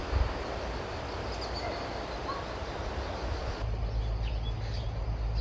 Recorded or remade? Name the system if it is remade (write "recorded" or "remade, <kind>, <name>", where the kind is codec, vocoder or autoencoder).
recorded